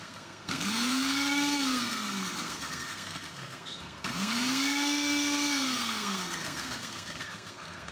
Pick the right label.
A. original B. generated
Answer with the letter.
B